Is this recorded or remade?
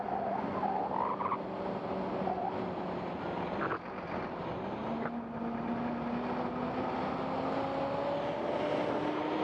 recorded